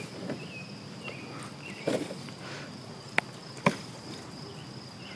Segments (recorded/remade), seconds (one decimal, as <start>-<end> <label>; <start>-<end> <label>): 0.0-5.2 recorded